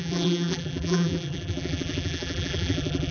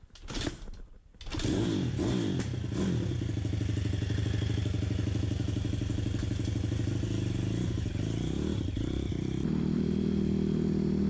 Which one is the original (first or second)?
second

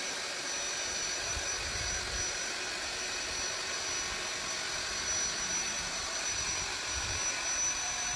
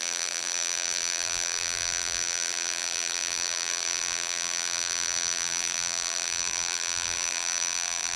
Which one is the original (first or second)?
first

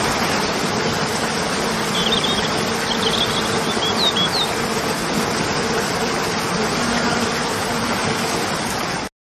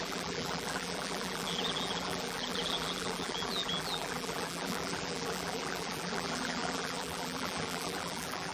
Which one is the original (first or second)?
first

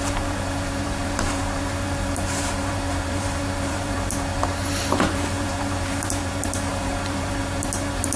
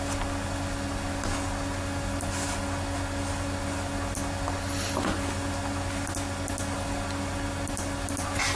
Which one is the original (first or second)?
second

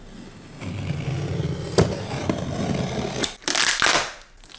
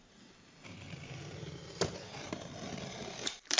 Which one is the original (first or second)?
first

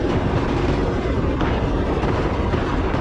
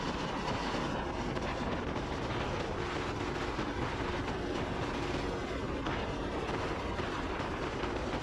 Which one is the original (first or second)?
second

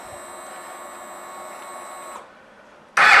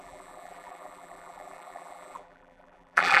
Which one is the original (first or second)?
first